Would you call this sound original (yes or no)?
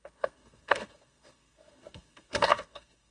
no